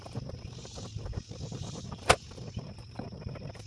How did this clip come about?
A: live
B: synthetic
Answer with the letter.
B